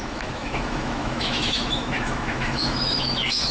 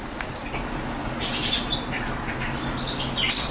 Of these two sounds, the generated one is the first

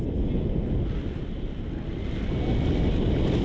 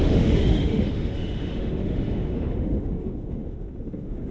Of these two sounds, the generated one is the second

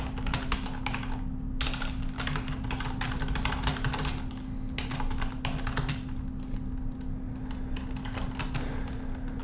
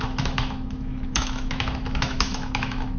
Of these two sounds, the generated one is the second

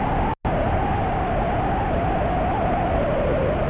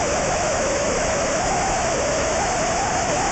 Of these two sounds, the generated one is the second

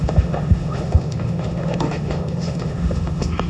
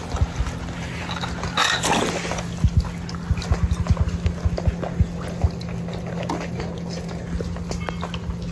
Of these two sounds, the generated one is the first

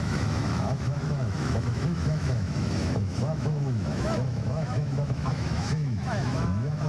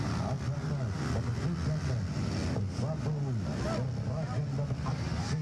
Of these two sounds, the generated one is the first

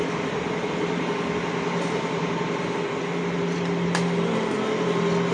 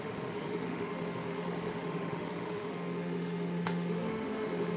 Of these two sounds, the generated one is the second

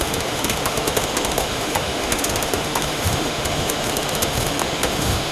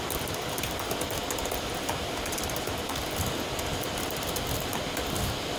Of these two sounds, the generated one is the first